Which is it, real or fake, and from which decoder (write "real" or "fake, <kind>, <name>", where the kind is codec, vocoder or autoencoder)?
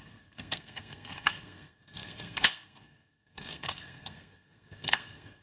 fake, codec, SNAC